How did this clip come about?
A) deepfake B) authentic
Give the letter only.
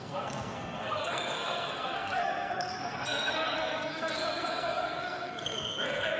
A